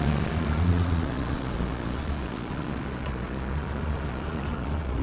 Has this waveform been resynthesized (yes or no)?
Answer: yes